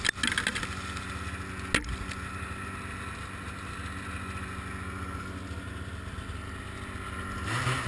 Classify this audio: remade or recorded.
recorded